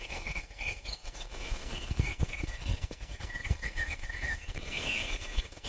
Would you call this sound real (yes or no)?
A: no